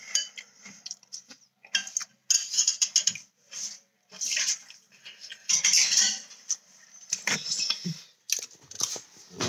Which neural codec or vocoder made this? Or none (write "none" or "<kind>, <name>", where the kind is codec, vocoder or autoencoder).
none